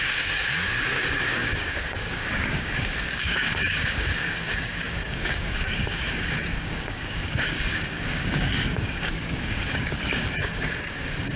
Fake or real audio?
fake